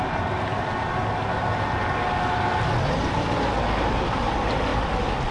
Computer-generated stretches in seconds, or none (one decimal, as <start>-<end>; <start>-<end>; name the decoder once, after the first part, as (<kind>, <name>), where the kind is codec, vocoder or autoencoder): none